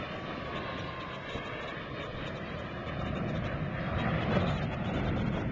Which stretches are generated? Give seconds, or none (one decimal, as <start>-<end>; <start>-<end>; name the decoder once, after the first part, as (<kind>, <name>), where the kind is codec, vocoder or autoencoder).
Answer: none